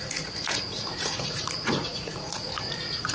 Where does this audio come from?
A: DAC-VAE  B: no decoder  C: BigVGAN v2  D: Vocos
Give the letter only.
D